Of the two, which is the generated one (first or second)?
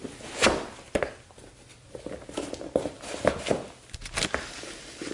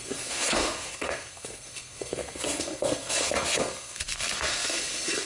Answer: second